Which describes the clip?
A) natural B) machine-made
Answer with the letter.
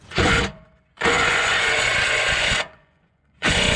B